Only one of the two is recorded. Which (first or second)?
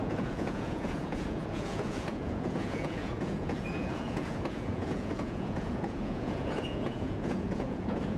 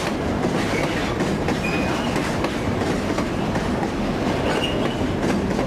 second